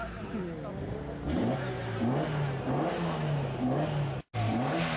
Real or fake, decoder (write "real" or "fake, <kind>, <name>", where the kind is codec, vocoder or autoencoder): real